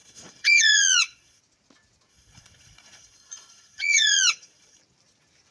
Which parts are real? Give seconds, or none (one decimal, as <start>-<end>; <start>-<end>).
1.4-2.1; 4.8-5.5